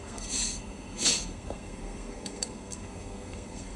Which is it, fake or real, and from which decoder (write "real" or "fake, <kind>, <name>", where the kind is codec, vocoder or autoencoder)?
fake, codec, SNAC